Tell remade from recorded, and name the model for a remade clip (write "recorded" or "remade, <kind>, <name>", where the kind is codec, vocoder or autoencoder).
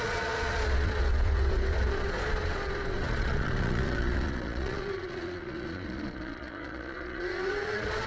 remade, vocoder, Vocos